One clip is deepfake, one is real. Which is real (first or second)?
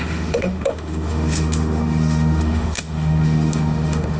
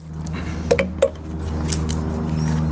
second